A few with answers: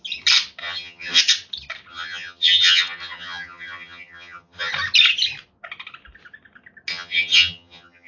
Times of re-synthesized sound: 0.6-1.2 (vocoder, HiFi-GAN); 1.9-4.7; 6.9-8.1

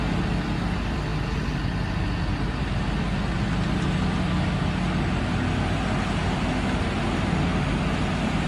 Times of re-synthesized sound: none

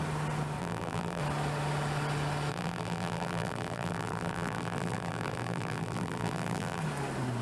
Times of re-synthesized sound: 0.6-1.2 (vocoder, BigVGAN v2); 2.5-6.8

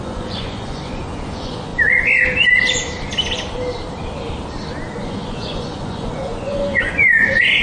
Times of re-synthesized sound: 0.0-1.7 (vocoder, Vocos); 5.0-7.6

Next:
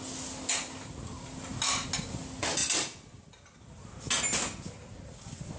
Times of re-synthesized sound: none

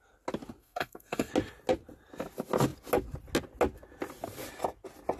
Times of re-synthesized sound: 0.6-1.3 (codec, SNAC)

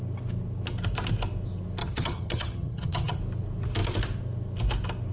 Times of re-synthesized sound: 1.8-3.2 (vocoder, HiFi-GAN)